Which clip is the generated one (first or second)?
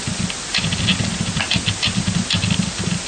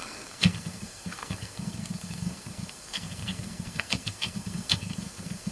second